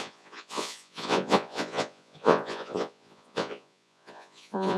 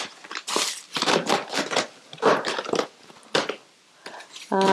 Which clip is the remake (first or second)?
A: first